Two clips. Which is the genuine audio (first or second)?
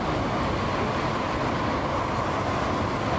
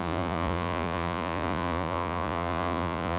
first